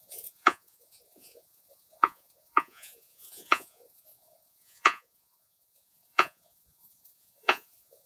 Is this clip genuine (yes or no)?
no